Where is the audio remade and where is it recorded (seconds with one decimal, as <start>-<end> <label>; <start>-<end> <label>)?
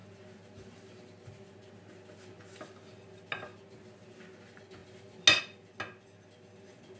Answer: 0.0-7.0 recorded